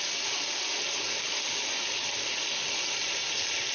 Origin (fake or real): real